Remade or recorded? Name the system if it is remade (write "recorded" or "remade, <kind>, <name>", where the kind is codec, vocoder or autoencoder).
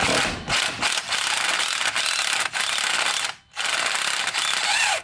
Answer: recorded